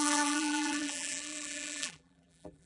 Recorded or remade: remade